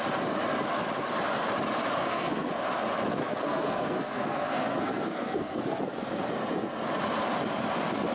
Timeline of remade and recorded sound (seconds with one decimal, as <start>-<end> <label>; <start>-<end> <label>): 0.0-2.0 recorded; 2.0-2.5 remade; 2.5-3.2 recorded; 3.2-5.8 remade; 5.8-8.1 recorded